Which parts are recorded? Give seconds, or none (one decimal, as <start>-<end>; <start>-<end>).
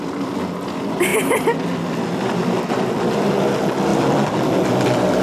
0.0-5.2